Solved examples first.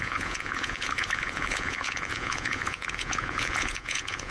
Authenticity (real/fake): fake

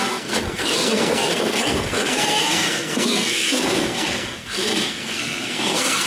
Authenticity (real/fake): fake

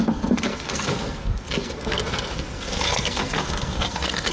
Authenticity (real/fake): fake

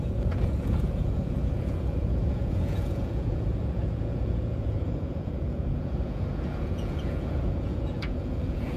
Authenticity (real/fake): fake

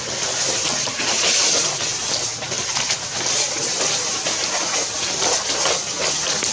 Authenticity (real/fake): real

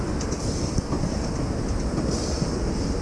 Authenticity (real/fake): real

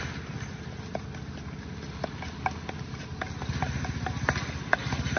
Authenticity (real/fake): real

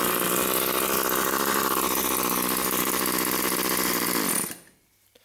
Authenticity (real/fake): fake